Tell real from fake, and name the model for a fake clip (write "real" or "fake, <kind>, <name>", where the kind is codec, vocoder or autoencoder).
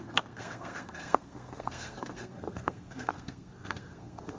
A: fake, codec, SNAC